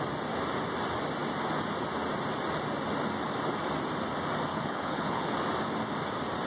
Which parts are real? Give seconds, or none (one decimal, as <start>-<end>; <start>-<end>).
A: 0.0-4.5; 5.3-6.5